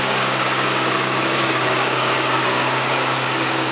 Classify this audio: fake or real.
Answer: fake